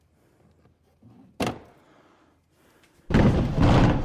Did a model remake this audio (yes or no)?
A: no